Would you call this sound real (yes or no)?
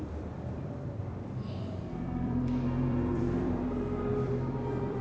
no